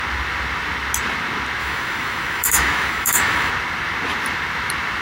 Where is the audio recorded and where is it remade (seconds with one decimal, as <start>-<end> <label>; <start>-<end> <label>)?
0.0-1.6 recorded; 1.6-3.5 remade; 3.5-5.0 recorded